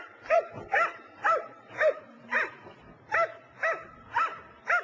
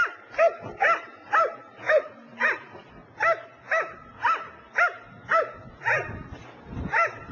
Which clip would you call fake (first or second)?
first